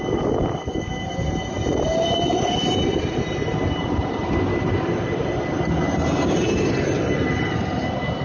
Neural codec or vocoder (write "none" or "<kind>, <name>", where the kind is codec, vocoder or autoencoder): none